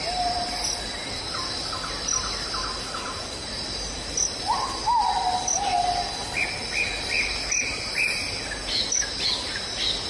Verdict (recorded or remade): recorded